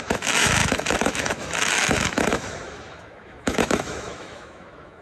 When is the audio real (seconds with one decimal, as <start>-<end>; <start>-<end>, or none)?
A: none